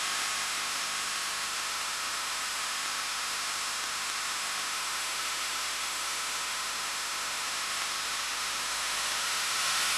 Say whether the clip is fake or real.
fake